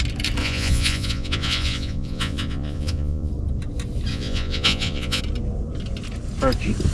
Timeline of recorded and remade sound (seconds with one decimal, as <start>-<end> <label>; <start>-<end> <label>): 0.0-0.4 recorded; 0.4-3.3 remade; 3.3-4.1 recorded; 4.1-5.2 remade; 5.2-6.9 recorded